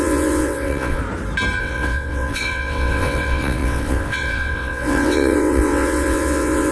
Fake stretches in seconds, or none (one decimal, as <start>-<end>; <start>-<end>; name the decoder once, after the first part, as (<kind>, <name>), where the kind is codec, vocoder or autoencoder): 0.0-1.0 (vocoder, WaveNeXt); 1.6-6.7